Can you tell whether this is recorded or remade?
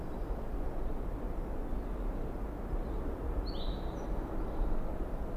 recorded